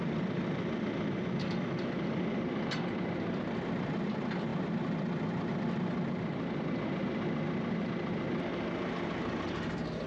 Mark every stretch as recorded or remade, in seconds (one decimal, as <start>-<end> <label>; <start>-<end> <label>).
0.0-10.1 recorded